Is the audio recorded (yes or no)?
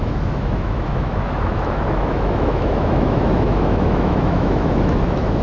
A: no